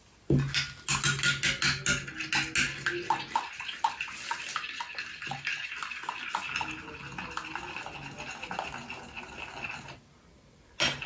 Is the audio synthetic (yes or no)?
no